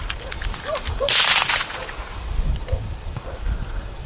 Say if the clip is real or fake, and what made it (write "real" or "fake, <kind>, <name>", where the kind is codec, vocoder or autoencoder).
real